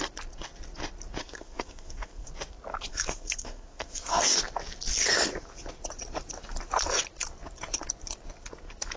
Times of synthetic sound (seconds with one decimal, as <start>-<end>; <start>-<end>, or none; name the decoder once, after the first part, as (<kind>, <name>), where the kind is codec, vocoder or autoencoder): 1.2-2.3 (codec, SNAC); 2.9-4.4